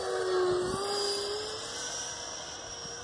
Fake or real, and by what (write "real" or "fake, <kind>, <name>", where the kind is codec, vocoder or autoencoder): real